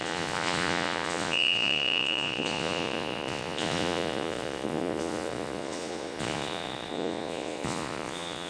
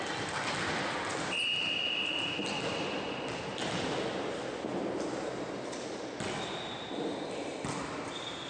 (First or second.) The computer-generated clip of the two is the first